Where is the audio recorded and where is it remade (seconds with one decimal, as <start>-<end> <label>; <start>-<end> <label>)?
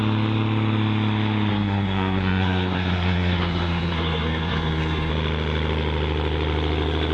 0.0-1.5 recorded; 1.5-5.1 remade; 5.1-7.1 recorded